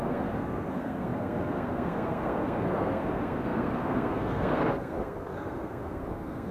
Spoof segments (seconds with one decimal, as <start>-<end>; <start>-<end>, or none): 0.0-6.5